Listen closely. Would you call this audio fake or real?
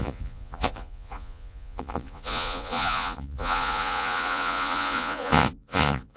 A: fake